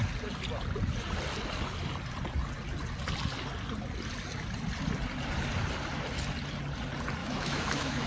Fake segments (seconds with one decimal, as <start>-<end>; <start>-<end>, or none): 7.2-8.1